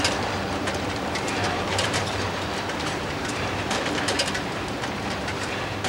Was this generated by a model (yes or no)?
yes